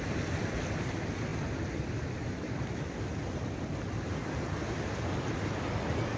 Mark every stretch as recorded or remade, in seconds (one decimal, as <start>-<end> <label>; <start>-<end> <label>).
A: 0.0-6.2 recorded